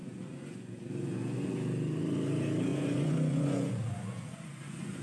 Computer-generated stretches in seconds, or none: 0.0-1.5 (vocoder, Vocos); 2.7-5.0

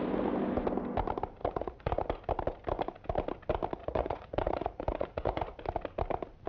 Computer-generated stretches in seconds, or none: 1.4-2.0 (vocoder, Vocos); 3.8-5.6

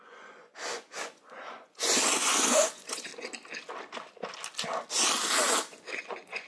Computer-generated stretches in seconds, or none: 0.0-3.1 (vocoder, Vocos); 5.9-6.5